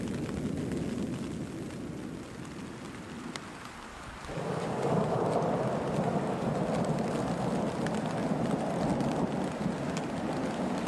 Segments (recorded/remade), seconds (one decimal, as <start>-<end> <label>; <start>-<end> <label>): 0.0-3.9 recorded; 3.9-5.3 remade; 5.3-10.9 recorded